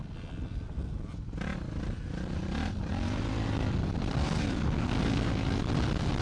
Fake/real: real